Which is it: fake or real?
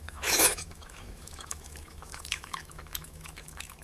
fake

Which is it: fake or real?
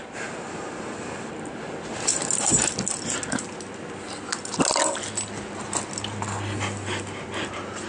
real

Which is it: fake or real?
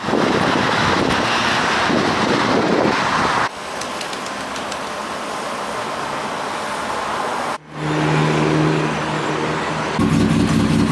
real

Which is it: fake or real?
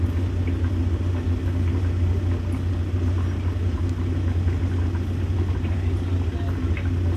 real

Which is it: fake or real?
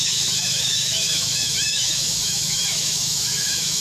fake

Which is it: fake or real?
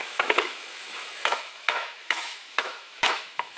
fake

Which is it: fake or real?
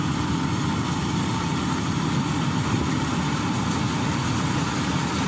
real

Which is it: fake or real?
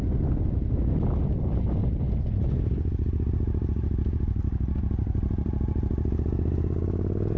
real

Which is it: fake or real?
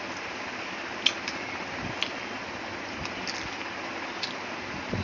real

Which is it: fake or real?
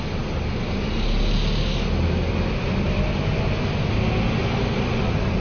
real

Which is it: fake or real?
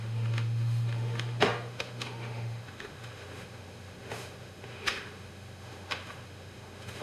fake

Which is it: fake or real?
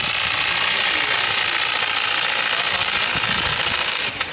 real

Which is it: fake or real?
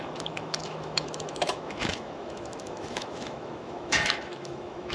fake